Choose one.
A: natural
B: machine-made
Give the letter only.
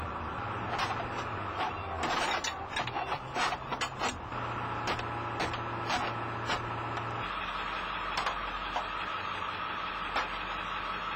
A